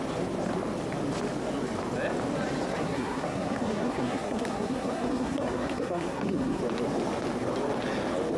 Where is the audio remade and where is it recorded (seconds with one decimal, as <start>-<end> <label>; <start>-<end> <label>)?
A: 0.0-2.7 recorded; 2.7-6.6 remade; 6.6-8.4 recorded